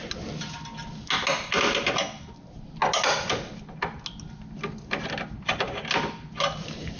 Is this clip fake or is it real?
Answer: real